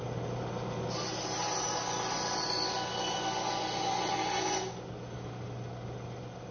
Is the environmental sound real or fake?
real